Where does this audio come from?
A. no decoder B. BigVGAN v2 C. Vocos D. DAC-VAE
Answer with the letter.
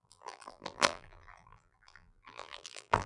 B